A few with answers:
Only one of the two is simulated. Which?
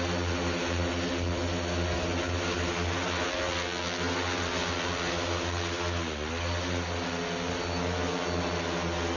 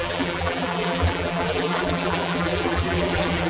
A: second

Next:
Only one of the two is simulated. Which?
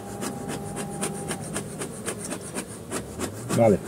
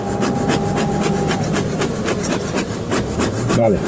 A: second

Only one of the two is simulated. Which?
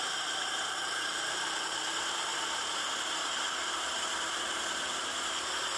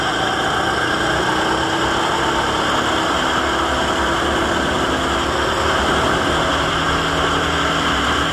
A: first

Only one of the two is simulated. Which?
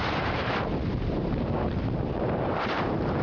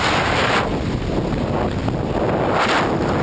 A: first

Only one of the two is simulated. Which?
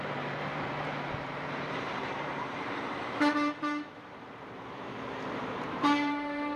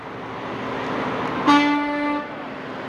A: first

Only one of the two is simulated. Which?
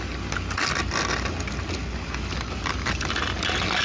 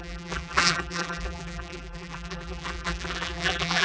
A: second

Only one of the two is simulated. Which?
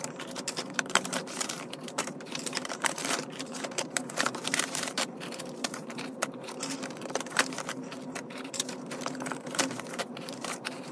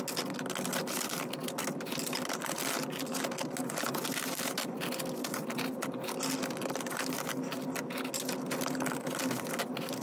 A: first